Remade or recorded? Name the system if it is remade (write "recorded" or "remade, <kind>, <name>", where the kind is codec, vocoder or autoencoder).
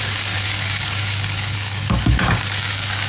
remade, codec, DAC